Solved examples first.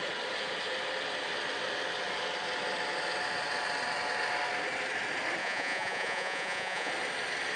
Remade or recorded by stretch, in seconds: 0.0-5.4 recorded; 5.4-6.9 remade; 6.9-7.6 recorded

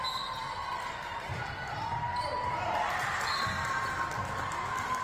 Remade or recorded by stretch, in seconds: 0.0-5.0 recorded

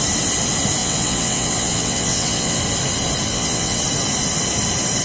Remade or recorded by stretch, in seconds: 0.0-0.8 recorded; 0.8-2.6 remade; 2.6-3.3 recorded; 3.3-3.8 remade; 3.8-5.0 recorded